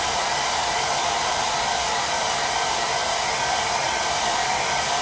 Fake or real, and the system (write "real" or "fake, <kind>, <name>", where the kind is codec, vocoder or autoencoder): real